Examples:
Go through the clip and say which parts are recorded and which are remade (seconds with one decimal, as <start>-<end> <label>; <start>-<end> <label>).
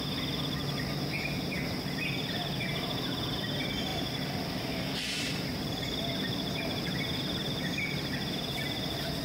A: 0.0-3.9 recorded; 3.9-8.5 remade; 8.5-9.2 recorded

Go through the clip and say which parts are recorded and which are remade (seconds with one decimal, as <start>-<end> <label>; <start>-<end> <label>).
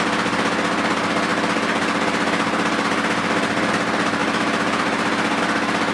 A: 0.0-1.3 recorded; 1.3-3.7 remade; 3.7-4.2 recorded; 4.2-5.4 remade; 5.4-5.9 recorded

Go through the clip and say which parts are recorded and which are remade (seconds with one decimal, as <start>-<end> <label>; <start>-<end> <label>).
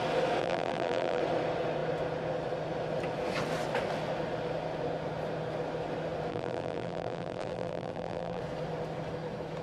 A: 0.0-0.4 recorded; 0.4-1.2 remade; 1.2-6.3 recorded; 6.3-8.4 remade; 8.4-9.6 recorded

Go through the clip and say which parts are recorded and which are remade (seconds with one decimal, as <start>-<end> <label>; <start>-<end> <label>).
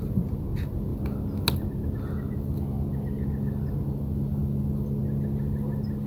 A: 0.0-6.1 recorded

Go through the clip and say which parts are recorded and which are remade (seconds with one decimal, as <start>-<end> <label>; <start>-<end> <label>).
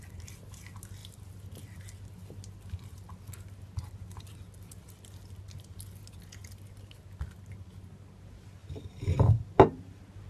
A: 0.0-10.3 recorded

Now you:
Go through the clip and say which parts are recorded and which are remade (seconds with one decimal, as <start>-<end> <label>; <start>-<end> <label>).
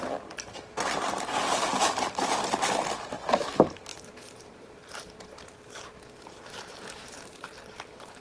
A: 0.0-3.9 recorded; 3.9-8.2 remade